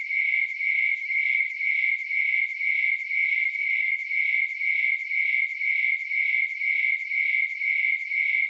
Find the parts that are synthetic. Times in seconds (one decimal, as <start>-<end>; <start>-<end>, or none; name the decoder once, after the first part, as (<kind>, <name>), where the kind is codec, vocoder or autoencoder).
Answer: 1.0-1.5 (autoencoder, DAC-VAE)